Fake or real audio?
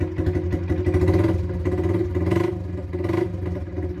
real